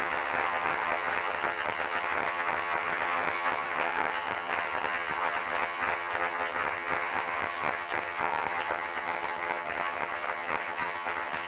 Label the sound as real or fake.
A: fake